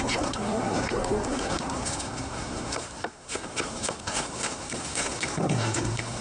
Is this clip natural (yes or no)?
no